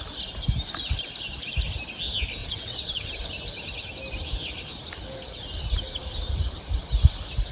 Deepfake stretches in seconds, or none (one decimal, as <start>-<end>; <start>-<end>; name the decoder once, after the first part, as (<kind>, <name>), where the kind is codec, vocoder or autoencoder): 2.4-3.1 (vocoder, WaveNeXt)